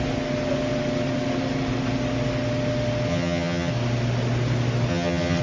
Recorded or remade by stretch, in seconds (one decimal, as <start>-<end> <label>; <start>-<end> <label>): 0.0-3.1 recorded; 3.1-3.7 remade; 3.7-4.9 recorded; 4.9-5.4 remade